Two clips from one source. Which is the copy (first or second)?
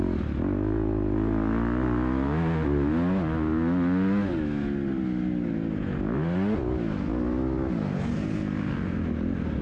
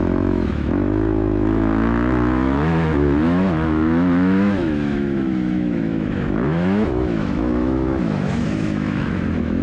second